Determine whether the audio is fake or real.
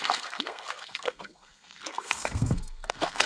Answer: fake